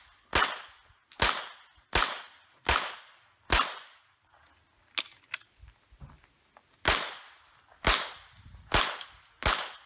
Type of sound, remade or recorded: recorded